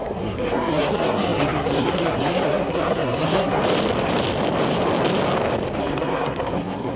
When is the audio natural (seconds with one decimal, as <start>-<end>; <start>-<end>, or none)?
3.6-5.8